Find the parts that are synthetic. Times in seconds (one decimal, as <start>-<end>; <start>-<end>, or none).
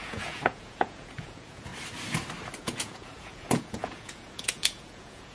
0.0-1.7; 2.6-5.3